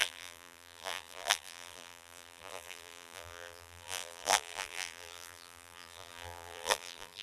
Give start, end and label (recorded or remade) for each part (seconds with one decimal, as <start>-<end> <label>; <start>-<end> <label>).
0.0-7.2 remade